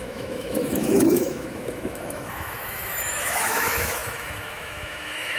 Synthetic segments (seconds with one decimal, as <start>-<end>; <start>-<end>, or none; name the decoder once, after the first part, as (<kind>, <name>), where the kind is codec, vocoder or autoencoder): 0.0-5.4 (autoencoder, DAC-VAE)